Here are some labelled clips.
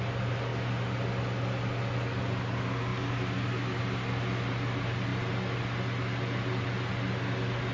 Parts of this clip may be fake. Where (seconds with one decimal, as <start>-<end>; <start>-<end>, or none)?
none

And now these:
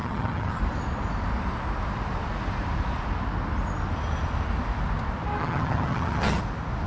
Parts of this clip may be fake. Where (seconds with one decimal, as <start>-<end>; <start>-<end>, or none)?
0.0-0.6; 5.4-6.4

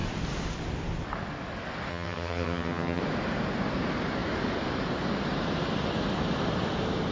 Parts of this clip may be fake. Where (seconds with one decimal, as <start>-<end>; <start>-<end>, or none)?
1.9-3.0

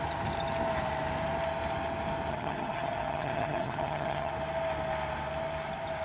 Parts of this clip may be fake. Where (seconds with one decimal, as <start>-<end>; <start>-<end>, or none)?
2.3-4.3

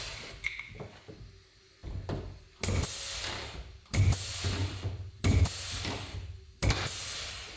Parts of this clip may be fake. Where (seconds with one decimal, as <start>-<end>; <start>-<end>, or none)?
none